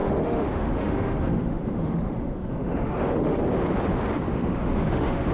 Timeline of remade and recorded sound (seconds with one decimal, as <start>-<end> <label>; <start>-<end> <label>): 0.0-3.4 remade; 3.4-4.3 recorded; 4.3-5.3 remade